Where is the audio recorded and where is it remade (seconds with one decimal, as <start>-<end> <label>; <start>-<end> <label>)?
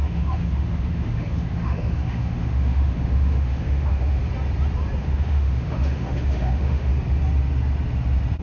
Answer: 0.0-4.2 remade; 4.2-5.0 recorded; 5.0-6.9 remade; 6.9-8.4 recorded